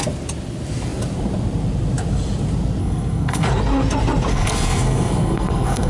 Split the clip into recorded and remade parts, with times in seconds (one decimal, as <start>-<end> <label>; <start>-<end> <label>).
0.0-2.8 recorded; 2.8-3.5 remade; 3.5-4.3 recorded; 4.3-5.9 remade

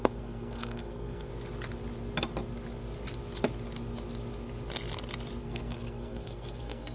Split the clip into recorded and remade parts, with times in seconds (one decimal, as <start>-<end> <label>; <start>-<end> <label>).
0.0-1.3 remade; 1.3-5.4 recorded; 5.4-6.9 remade

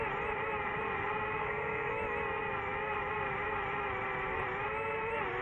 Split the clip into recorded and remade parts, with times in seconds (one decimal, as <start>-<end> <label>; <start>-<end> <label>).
0.0-1.4 recorded; 1.4-1.9 remade; 1.9-5.4 recorded